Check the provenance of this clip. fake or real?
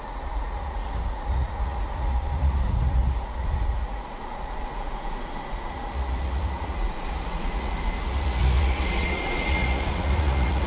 fake